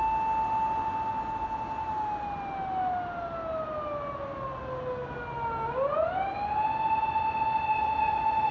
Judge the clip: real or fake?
real